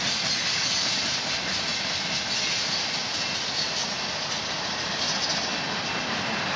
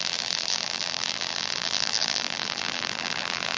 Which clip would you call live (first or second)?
first